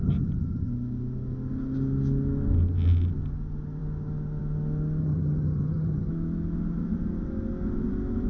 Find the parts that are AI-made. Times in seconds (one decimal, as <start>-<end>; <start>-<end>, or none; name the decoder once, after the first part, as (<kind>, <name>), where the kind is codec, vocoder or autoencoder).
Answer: 0.0-0.7 (vocoder, HiFi-GAN); 5.0-6.1